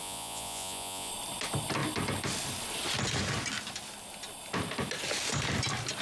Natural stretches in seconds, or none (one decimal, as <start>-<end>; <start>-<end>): 1.1-6.0